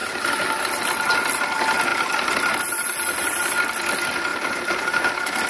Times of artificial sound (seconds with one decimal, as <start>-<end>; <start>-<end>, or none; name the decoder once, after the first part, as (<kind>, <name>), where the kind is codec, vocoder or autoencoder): 4.3-5.1 (vocoder, BigVGAN v2)